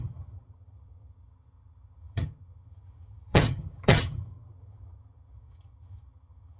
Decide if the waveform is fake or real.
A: fake